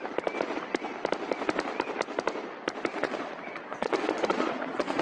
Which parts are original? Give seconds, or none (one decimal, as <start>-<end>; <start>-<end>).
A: 0.0-2.9